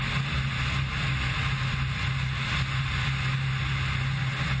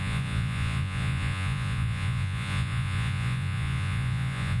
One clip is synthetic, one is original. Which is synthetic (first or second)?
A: second